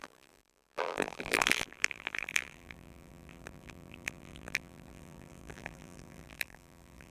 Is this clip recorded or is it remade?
remade